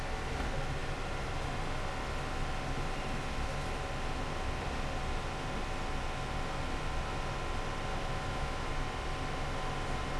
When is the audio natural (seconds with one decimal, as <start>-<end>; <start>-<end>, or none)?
0.0-7.9; 8.7-10.2